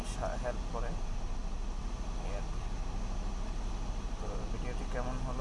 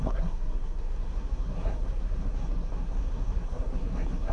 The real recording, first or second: first